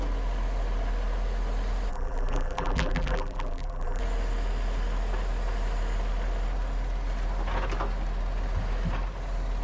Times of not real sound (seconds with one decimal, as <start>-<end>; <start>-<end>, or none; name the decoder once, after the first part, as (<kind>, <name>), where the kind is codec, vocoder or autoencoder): 1.9-4.0 (vocoder, BigVGAN v2)